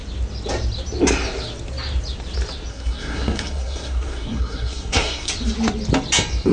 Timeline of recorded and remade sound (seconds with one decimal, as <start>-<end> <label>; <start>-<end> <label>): 0.0-2.7 recorded; 2.7-5.3 remade; 5.3-6.5 recorded